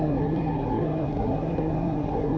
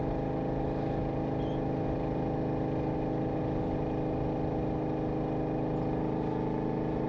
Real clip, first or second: second